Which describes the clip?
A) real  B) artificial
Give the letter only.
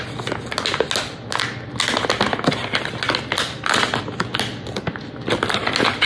A